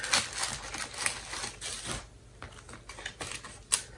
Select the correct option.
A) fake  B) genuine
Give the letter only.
B